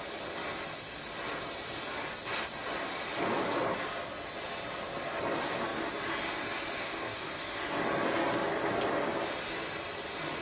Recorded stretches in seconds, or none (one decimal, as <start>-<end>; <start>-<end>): 0.0-6.8; 7.4-10.4